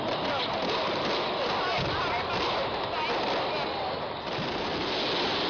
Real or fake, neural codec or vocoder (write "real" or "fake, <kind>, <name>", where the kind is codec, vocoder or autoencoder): real